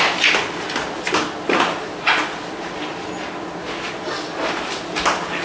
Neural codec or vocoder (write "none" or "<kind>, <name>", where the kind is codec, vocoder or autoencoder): none